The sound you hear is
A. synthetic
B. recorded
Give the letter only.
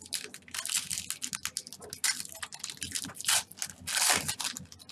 B